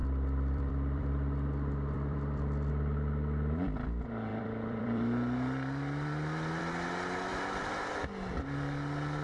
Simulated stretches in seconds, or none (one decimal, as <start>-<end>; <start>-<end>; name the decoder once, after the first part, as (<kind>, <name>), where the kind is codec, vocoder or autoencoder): 0.0-2.7 (vocoder, BigVGAN v2); 4.3-6.6; 7.3-7.9